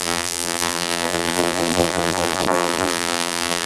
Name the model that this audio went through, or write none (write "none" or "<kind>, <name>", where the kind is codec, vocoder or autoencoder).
vocoder, BigVGAN v2